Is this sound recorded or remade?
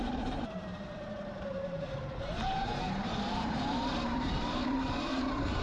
remade